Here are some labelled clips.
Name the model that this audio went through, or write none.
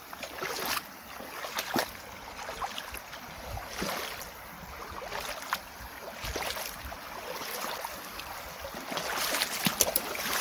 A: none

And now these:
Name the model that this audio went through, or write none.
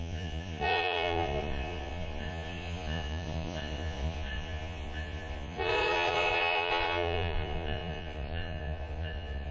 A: vocoder, Vocos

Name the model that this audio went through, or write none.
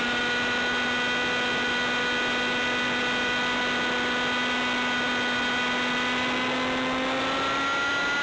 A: none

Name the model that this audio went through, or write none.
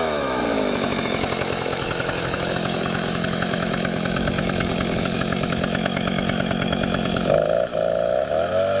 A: autoencoder, DAC-VAE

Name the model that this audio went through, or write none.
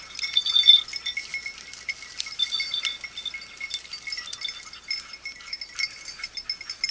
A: none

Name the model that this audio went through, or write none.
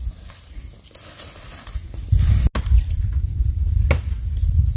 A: none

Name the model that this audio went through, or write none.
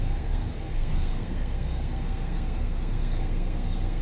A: codec, SNAC